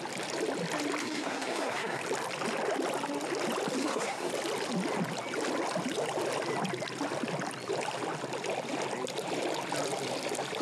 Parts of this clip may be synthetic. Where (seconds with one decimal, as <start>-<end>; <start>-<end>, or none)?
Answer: 1.0-2.0; 3.8-4.3